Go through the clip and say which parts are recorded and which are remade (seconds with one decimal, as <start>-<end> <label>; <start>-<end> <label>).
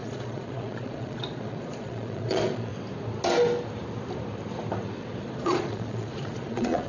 0.0-2.7 remade; 2.7-5.2 recorded; 5.2-6.9 remade